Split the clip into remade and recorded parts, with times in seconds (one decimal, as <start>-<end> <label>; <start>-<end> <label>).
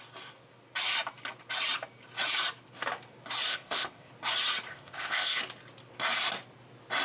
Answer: 0.0-3.5 recorded; 3.5-4.1 remade; 4.1-4.7 recorded; 4.7-5.4 remade; 5.4-7.0 recorded